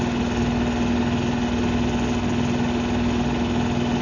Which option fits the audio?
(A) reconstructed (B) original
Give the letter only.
B